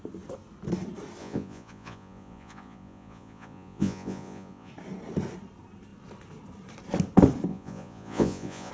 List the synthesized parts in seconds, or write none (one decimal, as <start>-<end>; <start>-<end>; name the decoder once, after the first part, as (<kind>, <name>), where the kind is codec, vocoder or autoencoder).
1.2-4.7 (vocoder, Vocos); 7.5-8.7